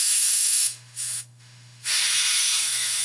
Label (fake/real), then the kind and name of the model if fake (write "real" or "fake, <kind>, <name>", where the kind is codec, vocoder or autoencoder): fake, autoencoder, DAC-VAE